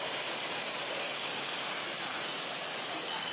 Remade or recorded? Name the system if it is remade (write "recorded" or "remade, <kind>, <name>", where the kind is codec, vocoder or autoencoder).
recorded